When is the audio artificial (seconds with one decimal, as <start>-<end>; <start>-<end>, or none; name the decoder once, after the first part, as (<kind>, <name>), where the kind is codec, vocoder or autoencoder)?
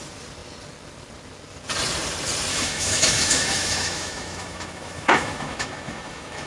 2.5-6.5 (autoencoder, DAC-VAE)